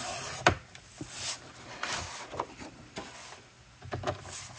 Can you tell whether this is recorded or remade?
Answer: recorded